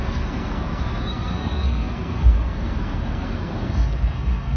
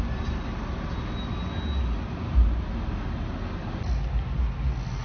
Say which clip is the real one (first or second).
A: second